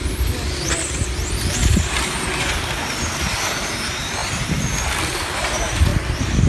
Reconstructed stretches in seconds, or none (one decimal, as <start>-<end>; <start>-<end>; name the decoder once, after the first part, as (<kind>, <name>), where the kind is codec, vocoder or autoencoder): none